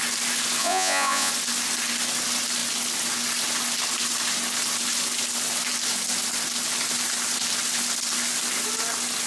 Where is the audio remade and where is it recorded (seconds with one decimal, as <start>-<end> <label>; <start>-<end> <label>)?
0.0-0.6 recorded; 0.6-1.3 remade; 1.3-9.3 recorded